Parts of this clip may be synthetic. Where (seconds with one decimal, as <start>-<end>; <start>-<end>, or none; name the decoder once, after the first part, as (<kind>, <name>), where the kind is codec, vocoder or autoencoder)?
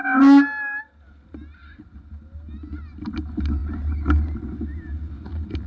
none